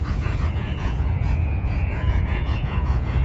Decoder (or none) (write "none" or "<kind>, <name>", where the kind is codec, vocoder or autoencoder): vocoder, Vocos